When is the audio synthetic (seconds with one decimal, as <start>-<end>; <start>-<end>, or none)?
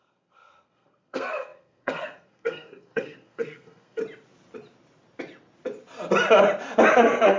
0.0-4.0; 6.9-7.4